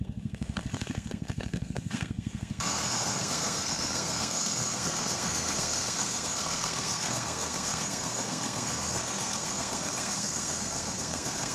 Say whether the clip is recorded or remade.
remade